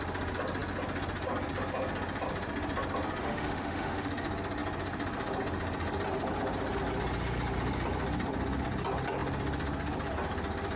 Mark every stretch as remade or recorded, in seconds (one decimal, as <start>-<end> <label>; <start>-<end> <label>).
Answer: 0.0-3.2 recorded; 3.2-4.1 remade; 4.1-10.8 recorded